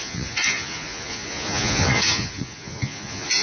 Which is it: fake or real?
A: fake